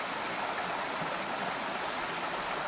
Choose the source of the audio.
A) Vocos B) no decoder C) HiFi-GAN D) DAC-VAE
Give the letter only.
B